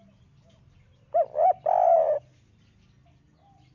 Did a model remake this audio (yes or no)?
no